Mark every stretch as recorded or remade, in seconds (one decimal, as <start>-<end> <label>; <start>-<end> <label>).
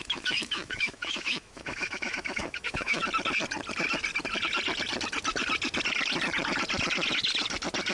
0.0-3.0 remade; 3.0-7.9 recorded